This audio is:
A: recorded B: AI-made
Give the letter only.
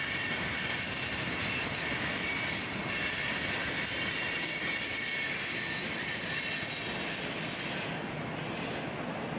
A